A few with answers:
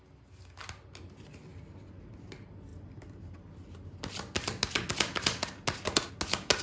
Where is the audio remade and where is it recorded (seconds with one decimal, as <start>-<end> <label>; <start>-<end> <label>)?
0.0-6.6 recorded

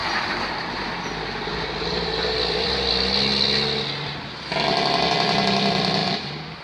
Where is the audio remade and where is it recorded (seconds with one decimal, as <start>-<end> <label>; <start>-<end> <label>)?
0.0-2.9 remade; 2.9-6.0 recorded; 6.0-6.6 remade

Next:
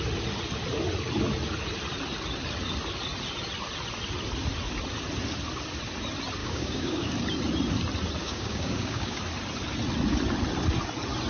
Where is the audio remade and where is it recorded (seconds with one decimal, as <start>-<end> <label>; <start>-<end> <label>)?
0.0-6.4 recorded; 6.4-7.1 remade; 7.1-8.2 recorded; 8.2-9.2 remade; 9.2-11.3 recorded

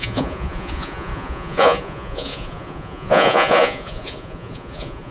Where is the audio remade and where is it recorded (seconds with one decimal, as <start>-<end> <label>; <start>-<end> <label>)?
0.0-5.1 remade

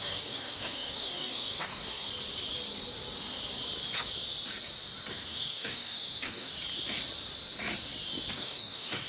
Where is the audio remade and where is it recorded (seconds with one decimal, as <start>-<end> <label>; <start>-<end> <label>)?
0.0-2.1 remade; 2.1-5.1 recorded; 5.1-6.5 remade; 6.5-8.3 recorded; 8.3-9.1 remade